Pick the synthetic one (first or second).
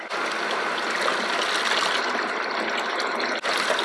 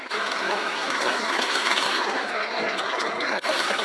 second